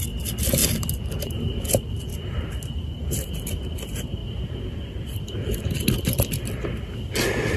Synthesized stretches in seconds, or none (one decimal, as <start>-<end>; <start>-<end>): 2.1-3.3